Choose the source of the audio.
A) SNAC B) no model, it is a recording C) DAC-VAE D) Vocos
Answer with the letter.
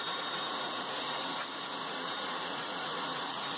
D